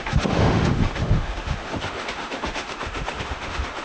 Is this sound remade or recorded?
remade